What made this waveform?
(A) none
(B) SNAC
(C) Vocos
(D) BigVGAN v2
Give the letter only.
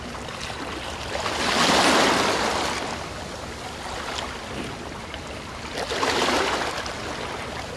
A